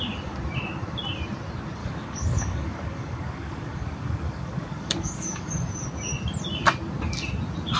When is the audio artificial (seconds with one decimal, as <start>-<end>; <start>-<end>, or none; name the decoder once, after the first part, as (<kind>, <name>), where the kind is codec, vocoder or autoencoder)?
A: 1.8-5.5 (codec, DAC)